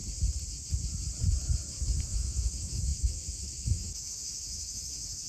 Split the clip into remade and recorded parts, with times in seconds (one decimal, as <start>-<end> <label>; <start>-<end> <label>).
0.0-2.0 recorded; 2.0-5.3 remade